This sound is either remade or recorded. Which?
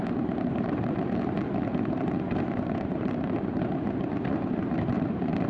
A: remade